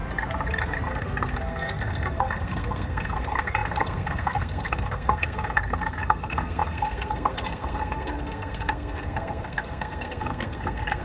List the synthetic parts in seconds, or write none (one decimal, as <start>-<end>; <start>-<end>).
0.9-11.0